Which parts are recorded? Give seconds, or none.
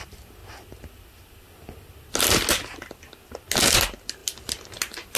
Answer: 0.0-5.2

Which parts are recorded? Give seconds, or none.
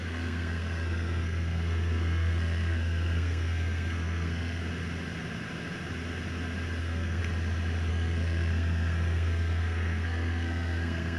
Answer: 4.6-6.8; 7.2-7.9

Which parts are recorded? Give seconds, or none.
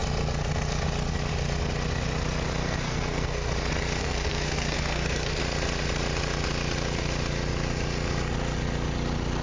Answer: 0.0-2.6; 3.5-4.0; 5.4-9.4